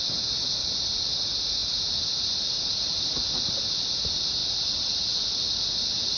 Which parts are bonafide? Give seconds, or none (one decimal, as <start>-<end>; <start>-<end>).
0.0-6.2